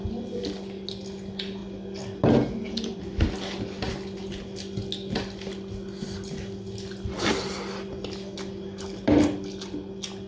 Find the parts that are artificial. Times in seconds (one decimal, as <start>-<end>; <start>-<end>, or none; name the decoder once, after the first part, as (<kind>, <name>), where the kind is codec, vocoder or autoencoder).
none